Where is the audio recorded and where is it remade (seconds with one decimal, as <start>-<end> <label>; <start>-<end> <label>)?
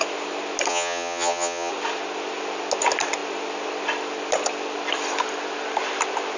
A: 0.0-0.7 recorded; 0.7-1.7 remade; 1.7-6.4 recorded